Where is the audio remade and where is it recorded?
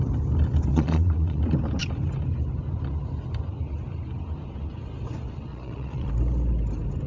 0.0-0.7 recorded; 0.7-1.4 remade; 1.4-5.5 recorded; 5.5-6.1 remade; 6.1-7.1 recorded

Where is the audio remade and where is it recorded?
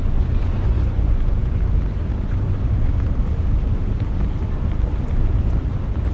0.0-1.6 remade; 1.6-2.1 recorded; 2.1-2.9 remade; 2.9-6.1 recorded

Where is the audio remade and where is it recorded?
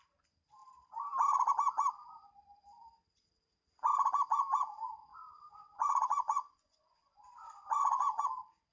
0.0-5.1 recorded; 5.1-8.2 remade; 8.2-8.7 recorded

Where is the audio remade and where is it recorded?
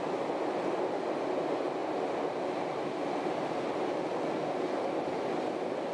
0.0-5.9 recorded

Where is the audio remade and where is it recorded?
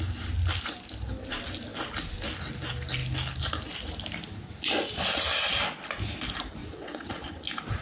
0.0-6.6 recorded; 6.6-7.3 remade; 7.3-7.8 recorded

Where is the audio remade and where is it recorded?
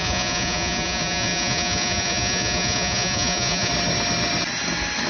0.0-3.7 remade; 3.7-5.1 recorded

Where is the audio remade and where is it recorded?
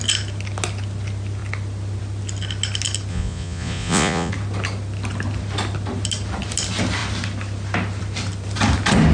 0.0-3.1 recorded; 3.1-4.3 remade; 4.3-9.1 recorded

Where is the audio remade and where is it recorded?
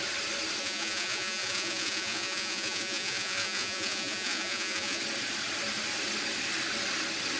0.0-0.6 recorded; 0.6-5.0 remade; 5.0-7.4 recorded